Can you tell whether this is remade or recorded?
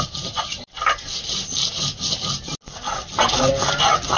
recorded